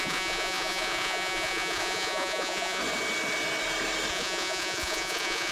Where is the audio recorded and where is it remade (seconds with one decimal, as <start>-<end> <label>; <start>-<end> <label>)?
0.0-2.8 remade; 2.8-4.1 recorded; 4.1-5.5 remade